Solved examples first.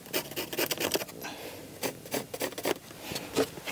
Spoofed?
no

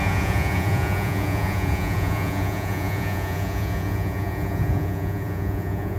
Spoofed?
yes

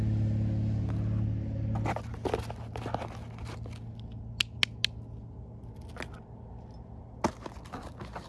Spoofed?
no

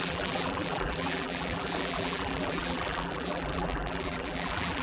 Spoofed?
yes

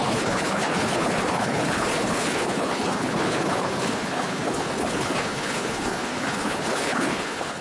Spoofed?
yes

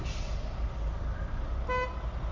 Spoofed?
no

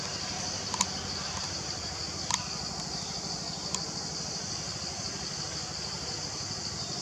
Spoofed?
no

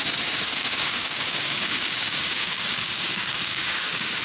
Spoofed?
yes